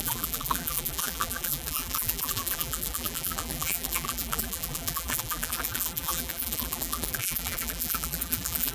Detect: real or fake fake